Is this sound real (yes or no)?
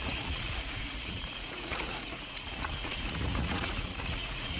no